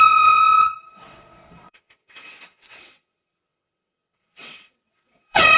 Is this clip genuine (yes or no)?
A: no